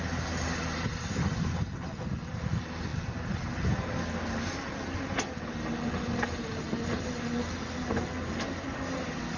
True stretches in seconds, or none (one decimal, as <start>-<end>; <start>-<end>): 0.0-9.4